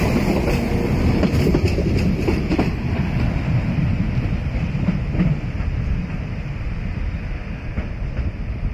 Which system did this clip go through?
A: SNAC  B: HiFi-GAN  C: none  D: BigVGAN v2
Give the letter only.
C